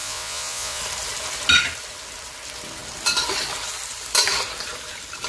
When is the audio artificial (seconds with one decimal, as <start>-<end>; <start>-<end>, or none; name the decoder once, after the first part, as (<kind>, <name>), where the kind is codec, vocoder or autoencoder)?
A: 0.0-0.8 (vocoder, Vocos)